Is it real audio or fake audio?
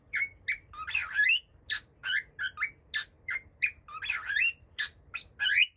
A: real